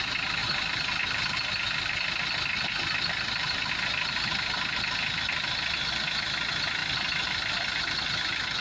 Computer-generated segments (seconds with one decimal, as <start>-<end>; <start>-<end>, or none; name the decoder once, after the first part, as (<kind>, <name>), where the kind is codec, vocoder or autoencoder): 0.4-3.7 (vocoder, BigVGAN v2); 6.8-7.8